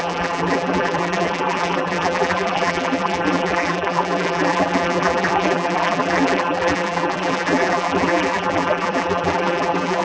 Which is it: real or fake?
fake